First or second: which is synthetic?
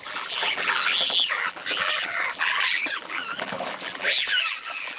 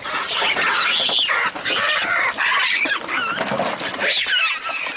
first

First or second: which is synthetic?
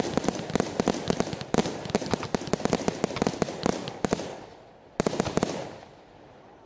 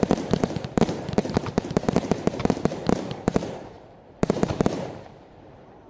second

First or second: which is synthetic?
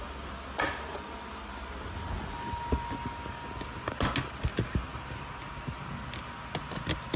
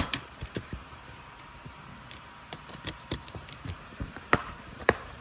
second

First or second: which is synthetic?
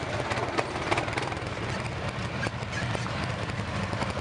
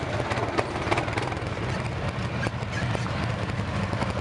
first